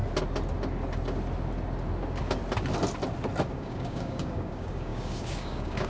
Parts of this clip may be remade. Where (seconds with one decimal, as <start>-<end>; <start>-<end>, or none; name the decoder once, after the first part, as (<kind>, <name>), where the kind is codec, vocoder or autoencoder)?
3.5-5.9 (codec, DAC)